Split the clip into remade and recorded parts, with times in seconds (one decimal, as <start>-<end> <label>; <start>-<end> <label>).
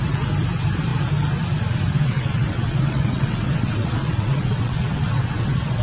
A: 0.0-2.0 recorded; 2.0-5.8 remade